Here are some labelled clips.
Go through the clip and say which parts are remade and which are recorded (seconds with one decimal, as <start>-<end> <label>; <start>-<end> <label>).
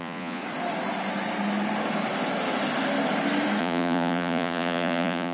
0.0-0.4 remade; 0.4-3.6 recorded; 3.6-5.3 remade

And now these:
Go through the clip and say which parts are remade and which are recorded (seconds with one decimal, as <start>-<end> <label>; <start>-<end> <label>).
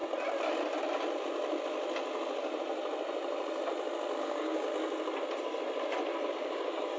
0.0-4.2 recorded; 4.2-4.7 remade; 4.7-6.3 recorded; 6.3-7.0 remade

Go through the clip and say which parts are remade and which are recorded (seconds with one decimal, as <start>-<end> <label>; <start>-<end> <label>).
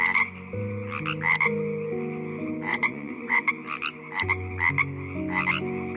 0.0-2.7 recorded; 2.7-3.5 remade; 3.5-6.0 recorded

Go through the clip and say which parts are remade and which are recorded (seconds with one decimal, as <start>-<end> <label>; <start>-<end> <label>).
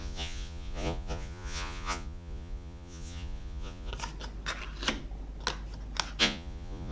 0.0-3.9 remade; 3.9-6.2 recorded; 6.2-6.9 remade